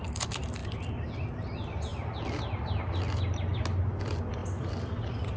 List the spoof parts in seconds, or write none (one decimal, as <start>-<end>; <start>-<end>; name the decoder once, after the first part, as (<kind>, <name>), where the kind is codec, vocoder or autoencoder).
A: 0.0-1.9 (vocoder, BigVGAN v2); 4.0-5.4